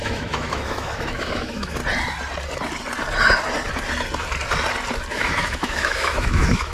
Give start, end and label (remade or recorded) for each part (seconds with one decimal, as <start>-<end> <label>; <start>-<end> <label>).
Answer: 0.0-1.8 remade; 1.8-5.1 recorded; 5.1-6.7 remade